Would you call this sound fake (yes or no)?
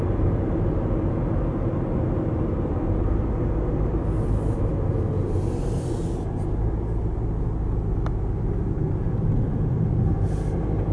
no